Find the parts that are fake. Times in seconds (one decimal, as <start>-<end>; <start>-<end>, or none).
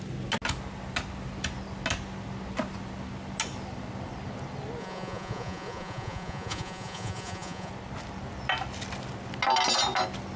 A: 4.8-7.7